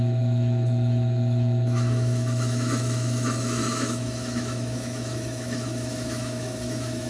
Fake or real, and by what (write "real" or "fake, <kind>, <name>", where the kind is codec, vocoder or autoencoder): fake, autoencoder, DAC-VAE